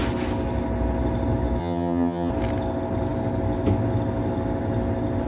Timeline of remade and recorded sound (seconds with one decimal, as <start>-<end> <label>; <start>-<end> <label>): 0.0-1.6 recorded; 1.6-2.3 remade; 2.3-5.3 recorded